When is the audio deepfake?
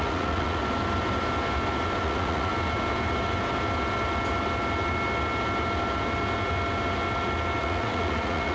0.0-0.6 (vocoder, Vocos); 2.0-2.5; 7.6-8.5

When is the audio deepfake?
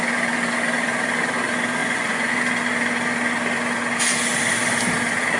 1.8-2.3 (vocoder, Vocos)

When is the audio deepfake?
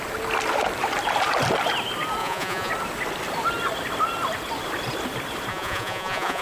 2.2-2.7 (vocoder, Vocos); 5.5-6.4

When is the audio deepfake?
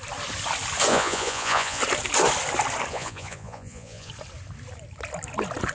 0.9-1.8 (vocoder, Vocos); 2.9-4.1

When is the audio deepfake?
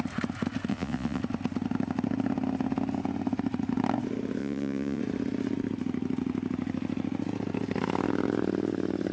0.7-1.2 (vocoder, Vocos); 4.4-5.0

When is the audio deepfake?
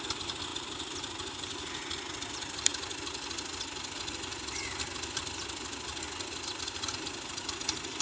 none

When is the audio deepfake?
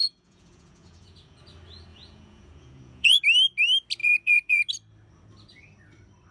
0.0-1.4 (vocoder, Vocos); 1.9-3.2; 4.0-4.7